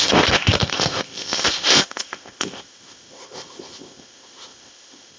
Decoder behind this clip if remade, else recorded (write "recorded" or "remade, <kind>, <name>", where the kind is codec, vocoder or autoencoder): remade, codec, ZipCodec